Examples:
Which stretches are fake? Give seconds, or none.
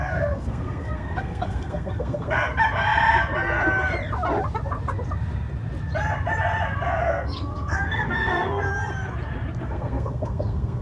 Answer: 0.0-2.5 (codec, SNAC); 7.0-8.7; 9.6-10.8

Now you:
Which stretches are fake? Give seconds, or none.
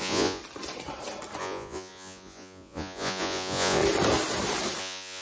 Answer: 0.0-0.4 (vocoder, Vocos); 1.4-3.8; 4.8-5.2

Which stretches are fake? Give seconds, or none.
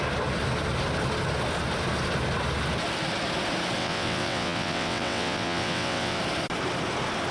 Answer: 3.8-6.2 (vocoder, WaveNeXt)